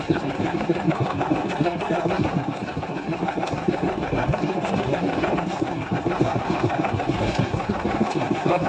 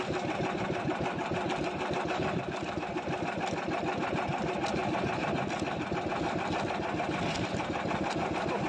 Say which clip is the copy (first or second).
first